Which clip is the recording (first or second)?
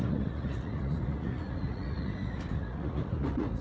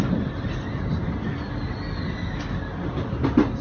second